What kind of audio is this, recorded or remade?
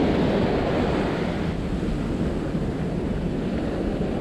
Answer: recorded